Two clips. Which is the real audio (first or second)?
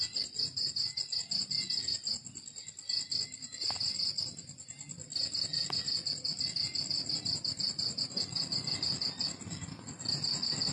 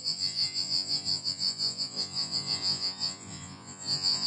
first